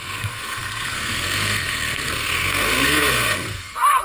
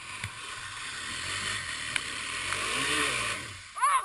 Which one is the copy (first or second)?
first